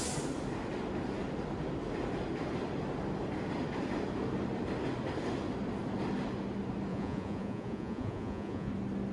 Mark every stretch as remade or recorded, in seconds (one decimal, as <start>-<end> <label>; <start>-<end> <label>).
0.0-6.9 recorded; 6.9-8.7 remade; 8.7-9.1 recorded